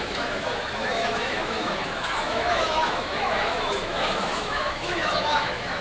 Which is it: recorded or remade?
remade